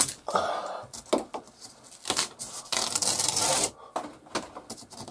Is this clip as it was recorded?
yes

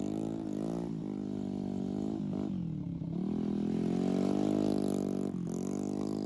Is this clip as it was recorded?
yes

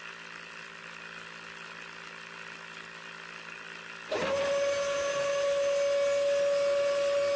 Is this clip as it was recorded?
yes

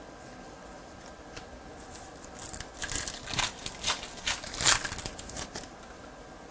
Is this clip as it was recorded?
yes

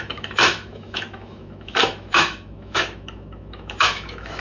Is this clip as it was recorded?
no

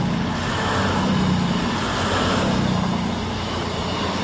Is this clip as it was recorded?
yes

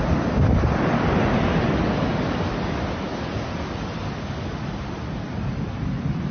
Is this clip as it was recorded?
yes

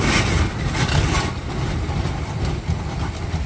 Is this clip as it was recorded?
yes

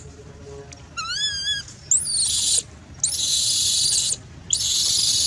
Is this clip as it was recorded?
yes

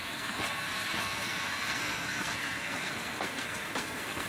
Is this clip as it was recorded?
no